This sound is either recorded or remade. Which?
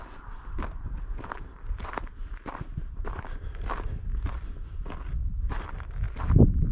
remade